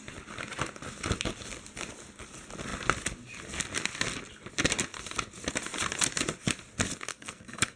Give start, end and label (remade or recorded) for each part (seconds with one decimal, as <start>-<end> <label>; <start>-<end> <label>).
0.0-7.1 recorded; 7.1-7.8 remade